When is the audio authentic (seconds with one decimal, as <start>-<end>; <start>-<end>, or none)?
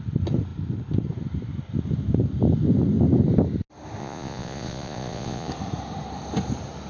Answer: 0.0-4.0; 5.5-6.9